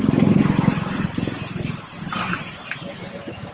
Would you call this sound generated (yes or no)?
no